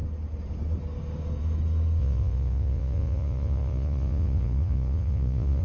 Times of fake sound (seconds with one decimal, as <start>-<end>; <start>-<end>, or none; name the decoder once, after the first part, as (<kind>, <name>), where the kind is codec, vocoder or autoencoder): 2.0-5.6 (vocoder, Vocos)